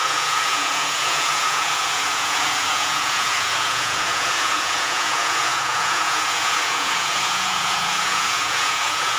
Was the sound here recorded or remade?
remade